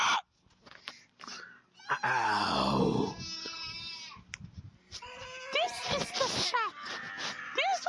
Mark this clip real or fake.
real